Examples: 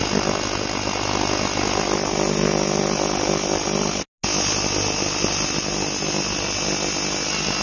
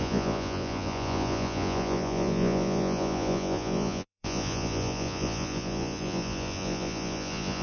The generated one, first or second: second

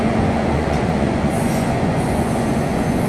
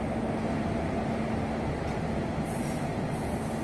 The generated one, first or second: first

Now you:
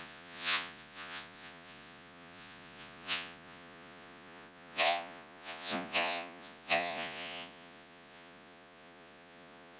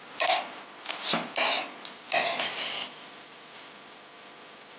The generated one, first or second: first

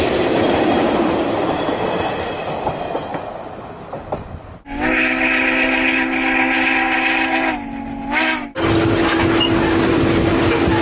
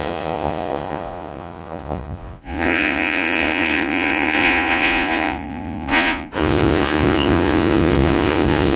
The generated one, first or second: second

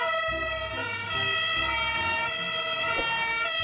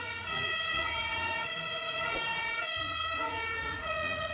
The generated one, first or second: second